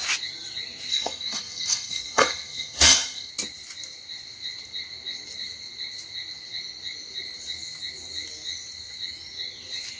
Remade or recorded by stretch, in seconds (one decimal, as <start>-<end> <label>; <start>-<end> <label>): 0.0-0.9 recorded; 0.9-3.3 remade; 3.3-10.0 recorded